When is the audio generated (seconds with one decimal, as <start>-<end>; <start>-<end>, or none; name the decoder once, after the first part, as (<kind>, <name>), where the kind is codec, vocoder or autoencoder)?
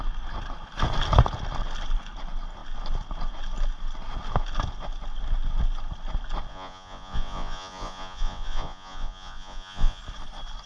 6.5-10.0 (vocoder, Vocos)